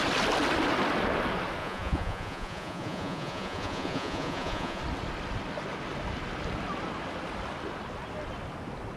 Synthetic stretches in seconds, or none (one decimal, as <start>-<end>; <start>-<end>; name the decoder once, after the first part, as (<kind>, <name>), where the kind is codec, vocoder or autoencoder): 1.6-4.8 (vocoder, Vocos)